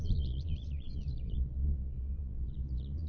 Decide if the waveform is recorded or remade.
remade